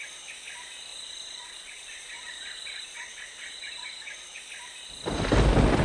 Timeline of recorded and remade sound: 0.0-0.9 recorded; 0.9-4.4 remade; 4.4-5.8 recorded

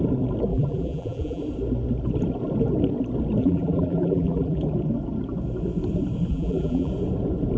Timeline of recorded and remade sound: 0.0-0.5 recorded; 0.5-1.4 remade; 1.4-3.4 recorded; 3.4-4.6 remade; 4.6-6.3 recorded; 6.3-6.9 remade; 6.9-7.6 recorded

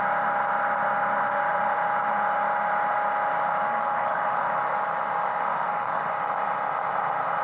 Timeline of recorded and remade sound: 0.0-3.7 recorded; 3.7-4.5 remade; 4.5-5.4 recorded; 5.4-6.1 remade; 6.1-7.4 recorded

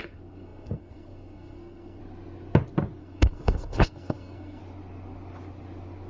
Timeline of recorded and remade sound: 0.0-2.0 remade; 2.0-3.0 recorded; 3.0-4.6 remade; 4.6-6.1 recorded

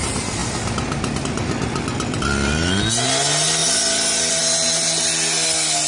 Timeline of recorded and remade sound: 0.0-5.9 recorded